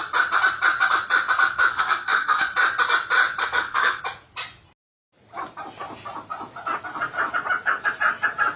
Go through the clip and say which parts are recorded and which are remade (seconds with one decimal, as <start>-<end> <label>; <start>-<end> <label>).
0.0-1.7 recorded; 1.7-2.4 remade; 2.4-3.4 recorded; 3.4-4.0 remade; 4.0-8.6 recorded